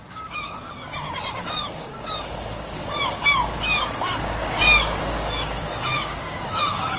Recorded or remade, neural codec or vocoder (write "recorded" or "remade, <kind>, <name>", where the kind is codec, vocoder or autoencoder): remade, codec, DAC